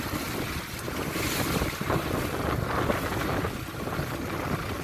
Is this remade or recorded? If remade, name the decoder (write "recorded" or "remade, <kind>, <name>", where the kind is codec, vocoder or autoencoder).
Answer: recorded